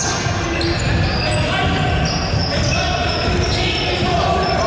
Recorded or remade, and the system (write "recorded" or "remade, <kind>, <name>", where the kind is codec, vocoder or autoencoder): recorded